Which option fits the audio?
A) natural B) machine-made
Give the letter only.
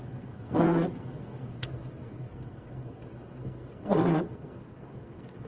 B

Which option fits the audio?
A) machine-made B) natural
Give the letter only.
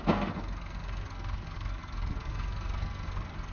A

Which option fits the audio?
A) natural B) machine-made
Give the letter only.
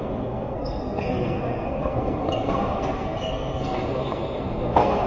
B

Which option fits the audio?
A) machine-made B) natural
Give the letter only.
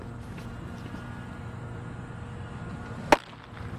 B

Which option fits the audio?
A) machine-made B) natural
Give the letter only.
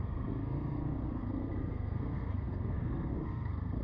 A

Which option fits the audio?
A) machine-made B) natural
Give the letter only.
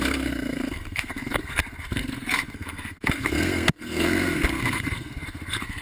A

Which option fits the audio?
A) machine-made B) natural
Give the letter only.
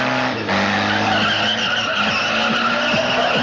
B